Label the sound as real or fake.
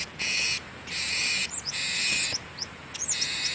fake